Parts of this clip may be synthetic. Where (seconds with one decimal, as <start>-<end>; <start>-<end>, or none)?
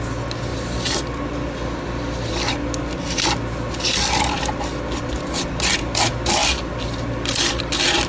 none